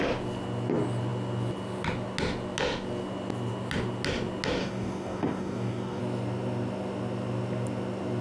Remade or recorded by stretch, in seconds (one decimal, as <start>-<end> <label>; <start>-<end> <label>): 0.0-4.6 recorded; 4.6-6.0 remade; 6.0-8.2 recorded